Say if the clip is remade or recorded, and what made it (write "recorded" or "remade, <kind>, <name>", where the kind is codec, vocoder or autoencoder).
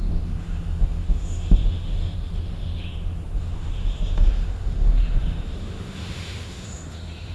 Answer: remade, autoencoder, DAC-VAE